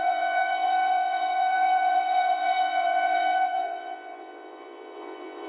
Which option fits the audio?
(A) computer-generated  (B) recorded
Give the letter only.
A